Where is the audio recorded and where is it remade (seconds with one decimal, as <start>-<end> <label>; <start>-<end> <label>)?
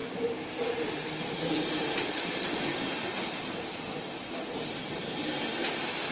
0.0-3.7 remade; 3.7-6.1 recorded